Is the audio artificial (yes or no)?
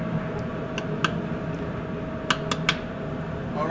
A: no